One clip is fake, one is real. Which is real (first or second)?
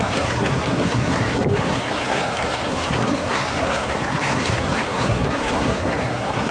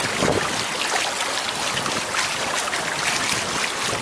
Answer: second